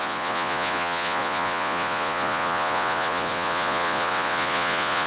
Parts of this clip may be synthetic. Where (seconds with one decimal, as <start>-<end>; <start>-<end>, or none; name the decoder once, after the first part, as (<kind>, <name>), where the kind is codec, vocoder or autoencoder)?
0.0-5.1 (vocoder, Vocos)